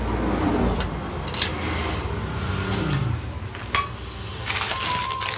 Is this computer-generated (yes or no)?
no